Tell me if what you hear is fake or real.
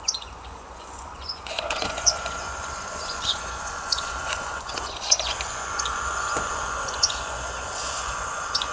fake